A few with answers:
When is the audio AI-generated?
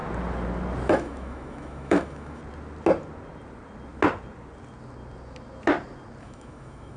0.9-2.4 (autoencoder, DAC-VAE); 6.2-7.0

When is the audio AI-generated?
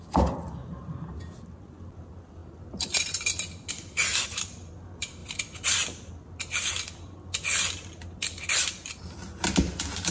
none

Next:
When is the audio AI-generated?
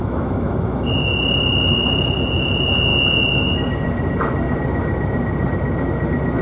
0.0-0.9 (autoencoder, DAC-VAE)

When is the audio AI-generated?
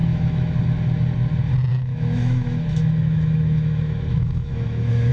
0.0-0.6 (autoencoder, DAC-VAE); 1.7-5.1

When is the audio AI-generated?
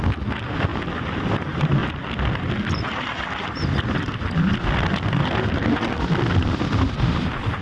none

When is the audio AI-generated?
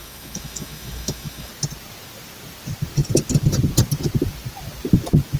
0.0-1.5 (autoencoder, DAC-VAE)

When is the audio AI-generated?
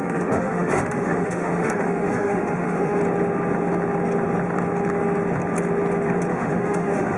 0.0-3.0 (autoencoder, DAC-VAE); 6.3-7.2